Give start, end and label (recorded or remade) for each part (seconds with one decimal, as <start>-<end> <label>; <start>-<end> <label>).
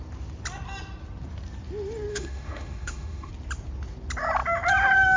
0.0-2.1 recorded; 2.1-3.3 remade; 3.3-5.2 recorded